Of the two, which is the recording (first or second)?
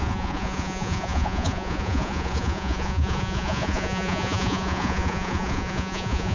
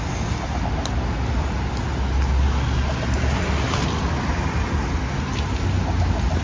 second